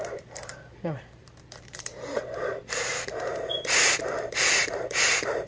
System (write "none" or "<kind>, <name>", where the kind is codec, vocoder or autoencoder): vocoder, BigVGAN v2